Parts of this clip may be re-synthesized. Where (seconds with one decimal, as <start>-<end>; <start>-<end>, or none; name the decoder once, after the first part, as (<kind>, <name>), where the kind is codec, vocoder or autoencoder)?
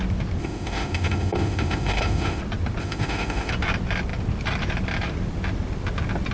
0.4-2.4 (autoencoder, DAC-VAE); 2.8-3.5